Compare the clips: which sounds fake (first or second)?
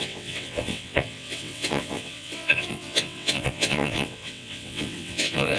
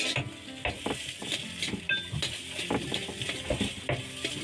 first